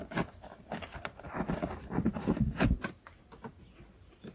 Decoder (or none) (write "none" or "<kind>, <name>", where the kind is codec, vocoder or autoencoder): none